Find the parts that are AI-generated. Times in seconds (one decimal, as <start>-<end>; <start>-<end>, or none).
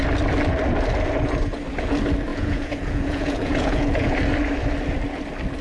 2.3-4.2